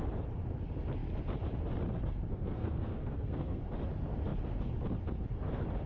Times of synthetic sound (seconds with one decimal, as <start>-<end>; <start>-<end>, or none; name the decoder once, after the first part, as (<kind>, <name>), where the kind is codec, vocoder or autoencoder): 2.3-3.6 (codec, SNAC)